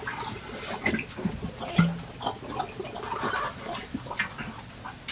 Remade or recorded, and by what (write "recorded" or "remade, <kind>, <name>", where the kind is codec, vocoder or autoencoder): recorded